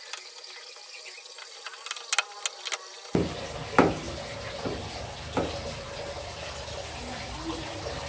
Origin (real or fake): real